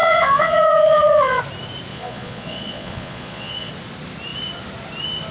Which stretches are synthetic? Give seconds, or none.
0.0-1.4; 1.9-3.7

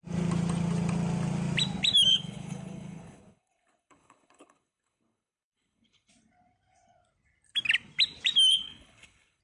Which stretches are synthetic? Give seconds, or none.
2.1-6.1; 8.5-9.4

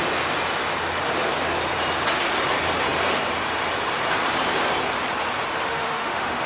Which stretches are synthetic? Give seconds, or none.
5.7-6.5